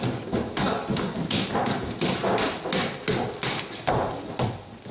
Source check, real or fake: real